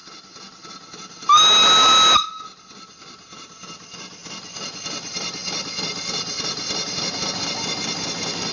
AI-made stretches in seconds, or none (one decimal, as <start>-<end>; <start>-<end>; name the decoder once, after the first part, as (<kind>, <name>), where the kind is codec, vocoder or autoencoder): none